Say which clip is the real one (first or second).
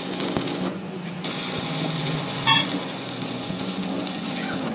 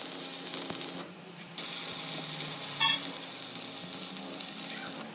second